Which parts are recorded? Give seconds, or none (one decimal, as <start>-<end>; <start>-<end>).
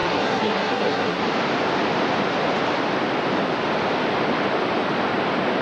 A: 1.2-5.6